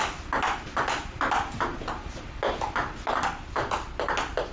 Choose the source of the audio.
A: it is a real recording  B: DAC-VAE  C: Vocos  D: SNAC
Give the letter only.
A